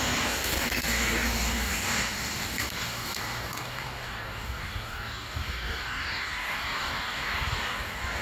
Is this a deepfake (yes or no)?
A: yes